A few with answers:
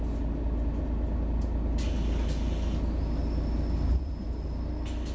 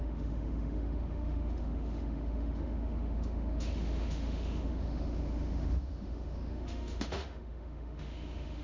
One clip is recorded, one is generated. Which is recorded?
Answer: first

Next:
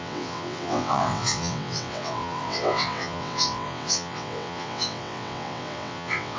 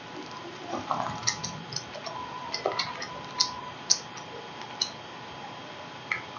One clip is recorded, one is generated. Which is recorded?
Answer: second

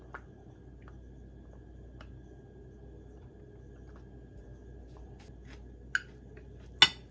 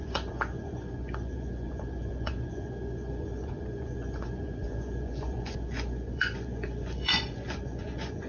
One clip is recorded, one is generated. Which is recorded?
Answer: first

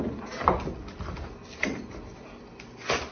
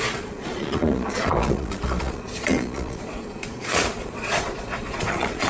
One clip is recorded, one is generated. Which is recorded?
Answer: first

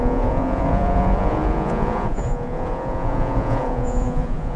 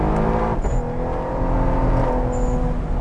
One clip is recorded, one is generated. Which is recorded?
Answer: second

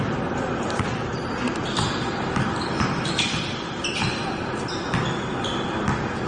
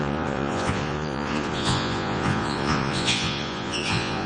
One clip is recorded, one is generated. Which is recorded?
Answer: first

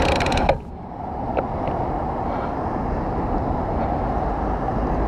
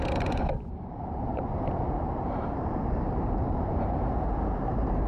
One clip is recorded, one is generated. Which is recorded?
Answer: first